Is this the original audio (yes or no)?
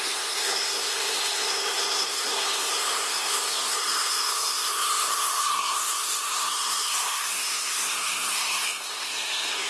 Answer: no